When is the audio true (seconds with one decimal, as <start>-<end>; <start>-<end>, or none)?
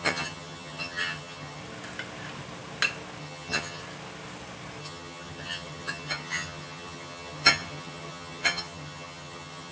1.6-3.2; 3.8-4.8